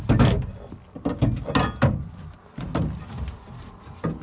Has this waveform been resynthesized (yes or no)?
no